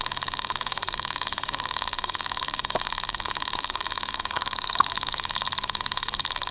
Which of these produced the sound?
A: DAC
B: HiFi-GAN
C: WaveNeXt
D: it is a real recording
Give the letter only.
A